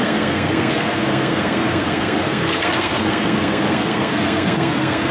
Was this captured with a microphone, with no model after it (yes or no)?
no